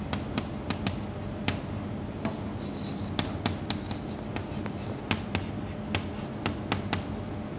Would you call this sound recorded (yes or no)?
yes